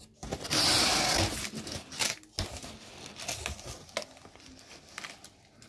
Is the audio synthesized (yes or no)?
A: no